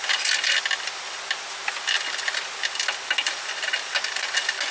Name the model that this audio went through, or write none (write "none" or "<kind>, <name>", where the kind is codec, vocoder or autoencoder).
none